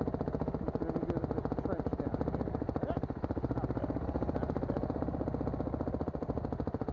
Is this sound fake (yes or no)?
no